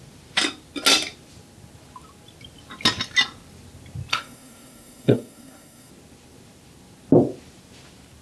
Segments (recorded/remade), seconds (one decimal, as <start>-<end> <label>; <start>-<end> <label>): 0.0-4.1 recorded; 4.1-5.9 remade; 5.9-8.2 recorded